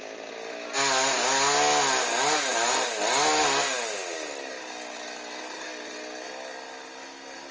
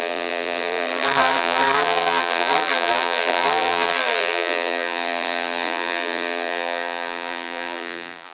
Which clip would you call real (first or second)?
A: first